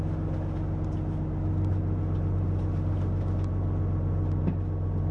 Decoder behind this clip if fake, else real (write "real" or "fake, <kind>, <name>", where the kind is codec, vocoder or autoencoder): real